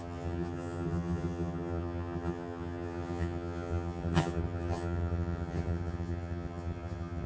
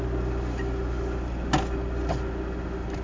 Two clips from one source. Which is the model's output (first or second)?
first